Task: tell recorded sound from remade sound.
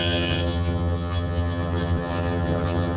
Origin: remade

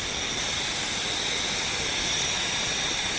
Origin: recorded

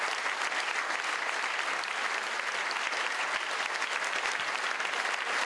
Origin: recorded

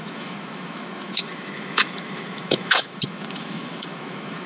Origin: remade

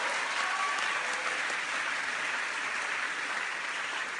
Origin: recorded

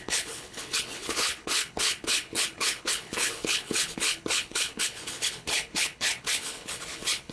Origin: remade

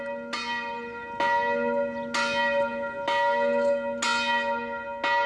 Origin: recorded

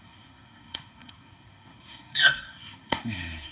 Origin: remade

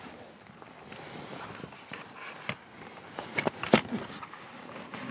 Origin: recorded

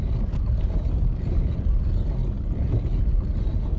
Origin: recorded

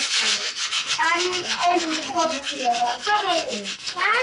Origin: remade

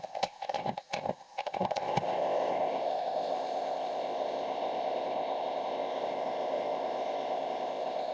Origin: remade